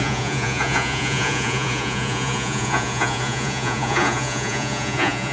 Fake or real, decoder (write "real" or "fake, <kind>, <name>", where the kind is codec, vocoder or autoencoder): fake, vocoder, Vocos